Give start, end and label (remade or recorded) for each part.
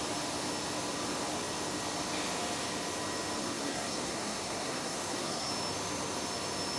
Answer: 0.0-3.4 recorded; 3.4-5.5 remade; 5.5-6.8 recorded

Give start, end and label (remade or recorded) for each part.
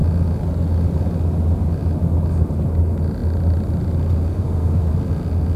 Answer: 0.0-4.3 recorded; 4.3-4.9 remade; 4.9-5.6 recorded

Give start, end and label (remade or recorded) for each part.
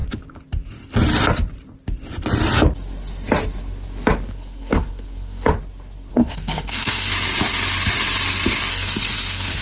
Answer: 0.0-4.3 recorded; 4.3-5.5 remade; 5.5-6.1 recorded; 6.1-7.1 remade; 7.1-8.7 recorded; 8.7-9.6 remade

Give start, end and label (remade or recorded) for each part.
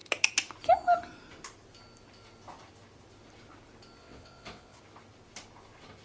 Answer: 0.0-4.0 recorded; 4.0-4.8 remade; 4.8-6.0 recorded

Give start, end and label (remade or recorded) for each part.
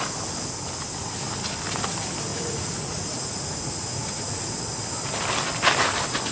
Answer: 0.0-2.3 recorded; 2.3-4.5 remade; 4.5-6.3 recorded